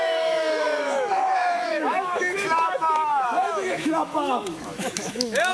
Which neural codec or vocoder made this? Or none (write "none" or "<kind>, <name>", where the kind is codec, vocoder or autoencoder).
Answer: autoencoder, DAC-VAE